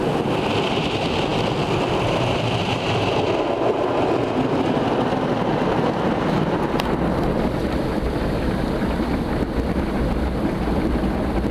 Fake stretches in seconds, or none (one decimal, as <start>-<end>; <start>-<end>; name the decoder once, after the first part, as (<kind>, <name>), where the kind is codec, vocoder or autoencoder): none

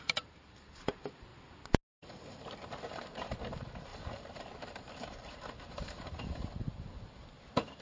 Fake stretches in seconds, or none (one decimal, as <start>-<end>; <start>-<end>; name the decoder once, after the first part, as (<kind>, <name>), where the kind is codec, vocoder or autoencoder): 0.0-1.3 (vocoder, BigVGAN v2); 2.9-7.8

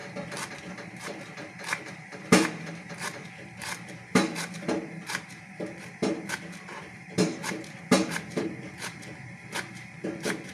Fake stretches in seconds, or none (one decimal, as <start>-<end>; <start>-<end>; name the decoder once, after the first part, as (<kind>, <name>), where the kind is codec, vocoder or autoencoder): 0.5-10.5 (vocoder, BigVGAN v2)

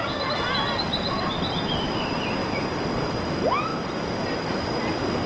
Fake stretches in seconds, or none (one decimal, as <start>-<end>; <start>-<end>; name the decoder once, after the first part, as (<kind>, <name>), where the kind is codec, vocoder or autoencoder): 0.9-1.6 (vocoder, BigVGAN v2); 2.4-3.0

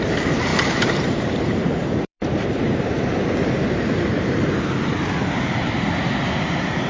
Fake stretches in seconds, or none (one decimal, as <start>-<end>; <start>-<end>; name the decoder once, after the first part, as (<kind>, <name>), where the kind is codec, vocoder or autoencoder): 0.5-4.6 (vocoder, BigVGAN v2)

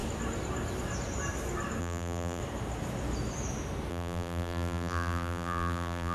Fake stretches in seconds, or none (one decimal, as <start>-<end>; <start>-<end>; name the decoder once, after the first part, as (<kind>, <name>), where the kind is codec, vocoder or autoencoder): 1.8-2.4 (vocoder, BigVGAN v2); 3.9-6.1

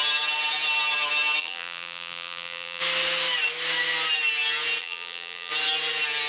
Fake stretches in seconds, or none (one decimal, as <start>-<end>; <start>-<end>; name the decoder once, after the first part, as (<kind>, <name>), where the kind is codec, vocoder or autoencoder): 1.4-2.8 (vocoder, BigVGAN v2); 4.8-5.5